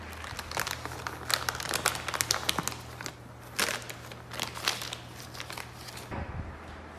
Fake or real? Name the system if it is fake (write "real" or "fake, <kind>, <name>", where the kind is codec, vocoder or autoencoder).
real